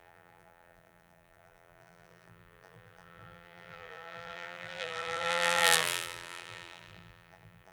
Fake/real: fake